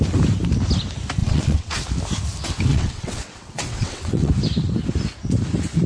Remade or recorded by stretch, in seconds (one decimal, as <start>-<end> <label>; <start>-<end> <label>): 0.0-1.2 recorded; 1.2-1.8 remade; 1.8-2.7 recorded; 2.7-4.3 remade; 4.3-5.9 recorded